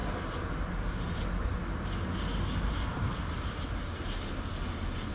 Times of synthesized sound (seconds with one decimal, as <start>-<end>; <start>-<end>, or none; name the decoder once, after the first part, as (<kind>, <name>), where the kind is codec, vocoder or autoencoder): none